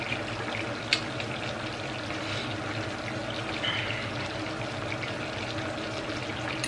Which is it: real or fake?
real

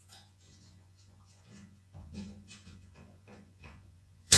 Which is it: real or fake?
fake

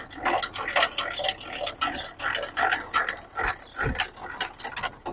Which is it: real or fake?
real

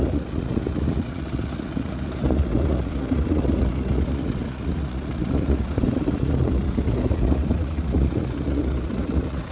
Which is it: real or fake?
fake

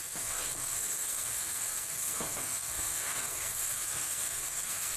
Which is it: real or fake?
fake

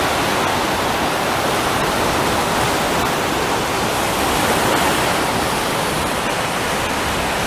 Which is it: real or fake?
real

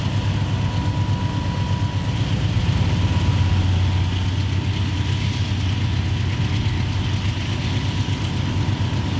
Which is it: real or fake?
real